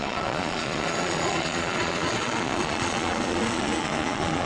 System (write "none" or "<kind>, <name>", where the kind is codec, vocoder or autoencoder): vocoder, Vocos